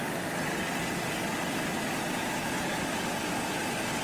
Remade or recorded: recorded